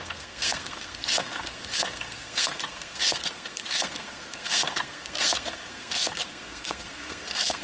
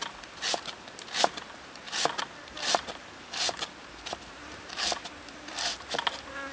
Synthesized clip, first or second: first